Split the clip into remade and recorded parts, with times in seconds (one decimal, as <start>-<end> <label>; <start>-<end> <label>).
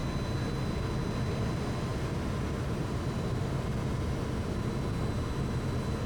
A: 0.0-6.1 recorded